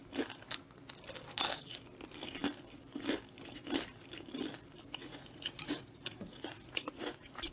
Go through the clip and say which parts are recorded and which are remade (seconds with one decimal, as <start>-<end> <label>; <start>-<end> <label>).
0.0-5.0 recorded; 5.0-7.5 remade